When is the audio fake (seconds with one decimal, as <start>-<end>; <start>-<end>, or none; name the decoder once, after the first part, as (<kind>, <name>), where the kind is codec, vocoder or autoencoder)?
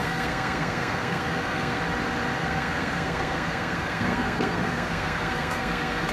0.0-1.8 (codec, SNAC); 2.4-6.1